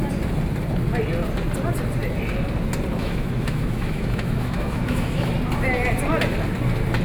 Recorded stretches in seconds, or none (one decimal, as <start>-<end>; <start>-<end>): 0.0-3.0; 5.3-7.0